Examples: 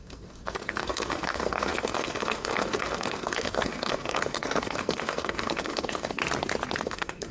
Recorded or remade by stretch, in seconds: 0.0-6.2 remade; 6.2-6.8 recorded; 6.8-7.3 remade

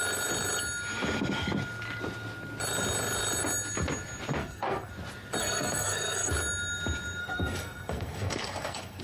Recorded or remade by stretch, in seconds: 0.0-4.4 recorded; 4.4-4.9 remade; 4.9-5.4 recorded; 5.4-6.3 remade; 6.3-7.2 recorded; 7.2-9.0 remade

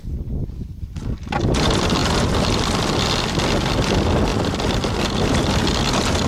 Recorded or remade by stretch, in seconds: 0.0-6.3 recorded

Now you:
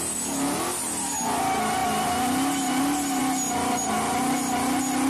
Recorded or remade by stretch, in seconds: 0.0-5.1 recorded

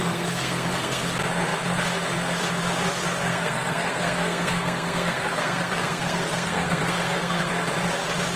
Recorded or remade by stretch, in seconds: 0.0-1.0 remade; 1.0-3.3 recorded; 3.3-7.5 remade; 7.5-8.4 recorded

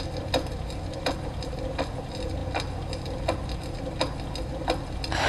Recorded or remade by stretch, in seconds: 0.0-5.3 recorded